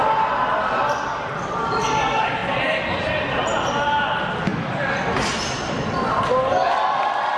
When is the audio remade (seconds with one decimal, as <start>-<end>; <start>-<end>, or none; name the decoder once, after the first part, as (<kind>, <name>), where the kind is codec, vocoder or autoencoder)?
1.1-1.7 (vocoder, BigVGAN v2); 2.4-3.2; 4.5-6.7